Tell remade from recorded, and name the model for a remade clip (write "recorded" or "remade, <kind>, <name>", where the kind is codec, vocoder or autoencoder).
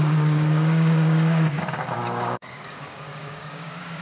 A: remade, codec, DAC